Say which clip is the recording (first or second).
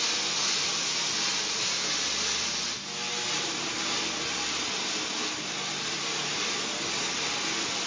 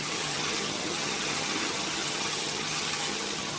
first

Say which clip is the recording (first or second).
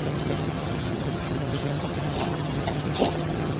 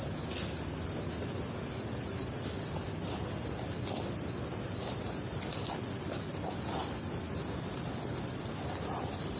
second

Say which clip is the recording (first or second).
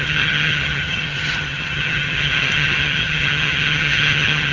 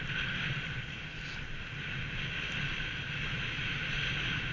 second